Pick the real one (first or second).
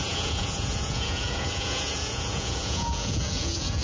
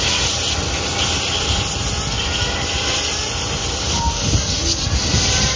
second